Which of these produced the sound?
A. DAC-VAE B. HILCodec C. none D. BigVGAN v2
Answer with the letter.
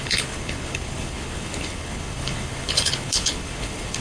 B